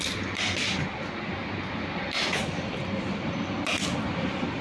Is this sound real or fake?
fake